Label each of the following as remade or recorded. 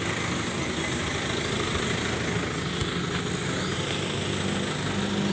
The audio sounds recorded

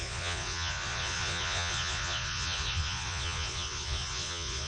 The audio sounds remade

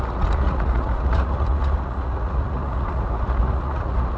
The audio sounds remade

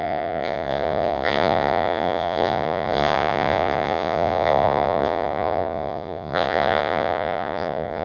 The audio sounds remade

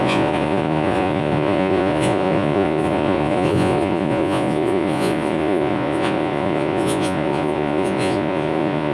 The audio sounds remade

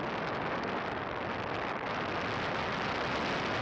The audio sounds recorded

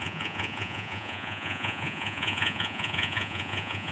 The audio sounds remade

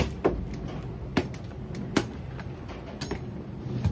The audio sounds recorded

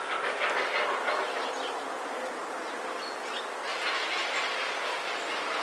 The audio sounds recorded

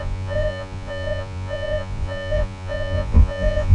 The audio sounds remade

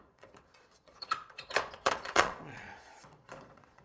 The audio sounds remade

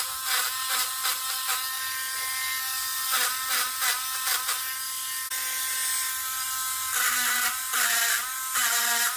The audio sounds recorded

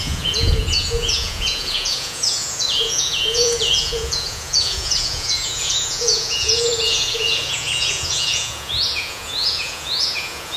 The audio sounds remade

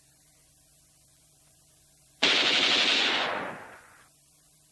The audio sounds remade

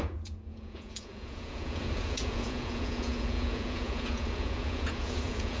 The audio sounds remade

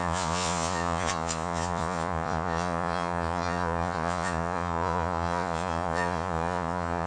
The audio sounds remade